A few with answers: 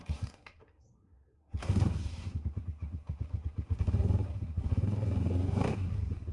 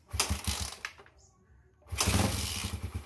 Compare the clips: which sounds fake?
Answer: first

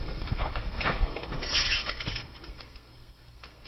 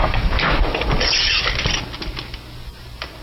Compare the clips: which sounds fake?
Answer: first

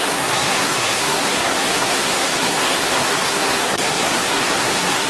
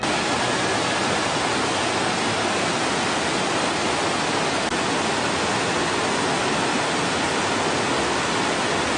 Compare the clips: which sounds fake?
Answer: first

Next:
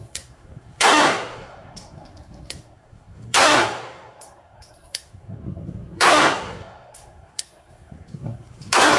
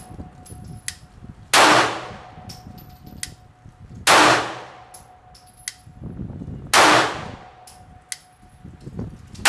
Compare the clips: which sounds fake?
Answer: first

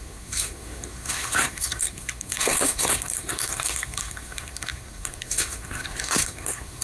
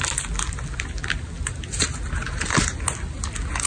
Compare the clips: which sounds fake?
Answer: first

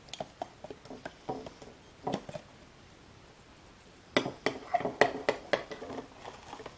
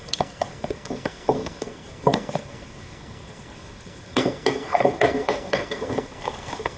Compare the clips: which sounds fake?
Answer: second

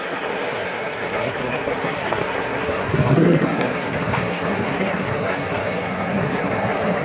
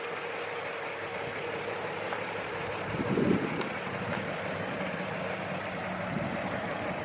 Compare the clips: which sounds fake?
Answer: first